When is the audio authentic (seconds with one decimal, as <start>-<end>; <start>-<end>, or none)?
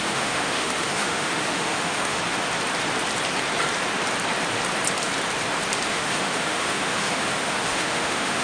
2.2-5.9